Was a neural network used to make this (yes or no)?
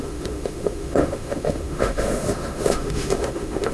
yes